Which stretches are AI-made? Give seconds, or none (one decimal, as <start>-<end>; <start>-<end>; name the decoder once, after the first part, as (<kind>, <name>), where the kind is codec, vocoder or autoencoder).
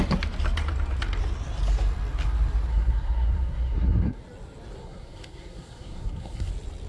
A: 2.7-4.2 (codec, SNAC); 4.8-6.5